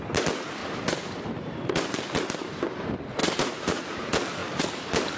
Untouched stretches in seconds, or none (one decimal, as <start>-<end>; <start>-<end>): 0.0-0.6; 2.7-3.2; 3.8-5.2